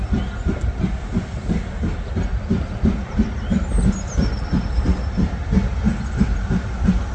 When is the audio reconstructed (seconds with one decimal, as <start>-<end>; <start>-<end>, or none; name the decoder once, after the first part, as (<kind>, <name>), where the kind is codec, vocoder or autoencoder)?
none